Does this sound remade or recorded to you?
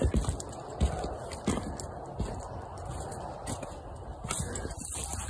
recorded